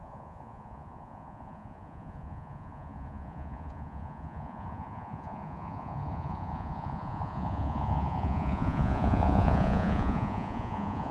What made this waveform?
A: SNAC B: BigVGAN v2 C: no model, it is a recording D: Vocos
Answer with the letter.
D